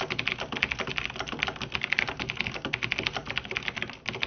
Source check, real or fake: real